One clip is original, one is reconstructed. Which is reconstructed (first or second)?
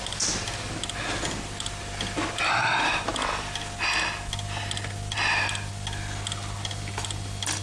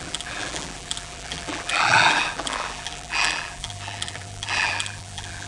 second